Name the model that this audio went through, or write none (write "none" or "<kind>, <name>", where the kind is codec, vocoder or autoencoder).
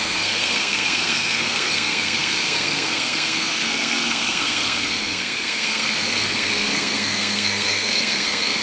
codec, SNAC